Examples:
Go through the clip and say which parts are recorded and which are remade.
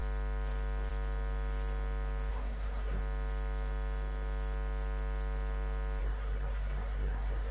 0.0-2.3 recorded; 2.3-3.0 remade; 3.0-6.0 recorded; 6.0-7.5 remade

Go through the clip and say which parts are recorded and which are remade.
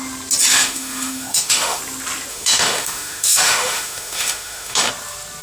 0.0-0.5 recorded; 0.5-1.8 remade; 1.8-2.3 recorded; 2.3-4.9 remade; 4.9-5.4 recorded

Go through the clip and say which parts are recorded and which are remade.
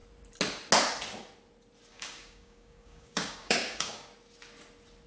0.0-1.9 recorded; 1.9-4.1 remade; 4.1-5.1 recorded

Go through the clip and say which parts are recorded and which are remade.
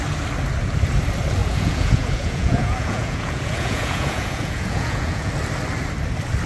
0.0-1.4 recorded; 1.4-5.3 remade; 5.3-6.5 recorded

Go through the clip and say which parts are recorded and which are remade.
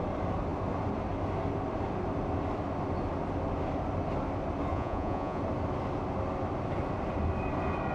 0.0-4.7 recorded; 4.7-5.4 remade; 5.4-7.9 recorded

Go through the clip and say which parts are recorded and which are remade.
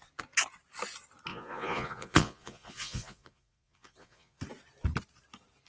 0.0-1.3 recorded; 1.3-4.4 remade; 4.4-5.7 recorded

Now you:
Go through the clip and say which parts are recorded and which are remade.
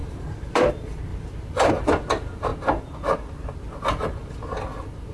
0.0-0.7 remade; 0.7-5.1 recorded